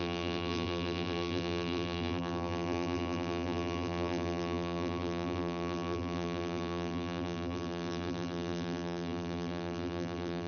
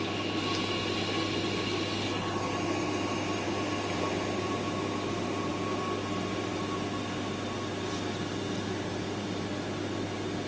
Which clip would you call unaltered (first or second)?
second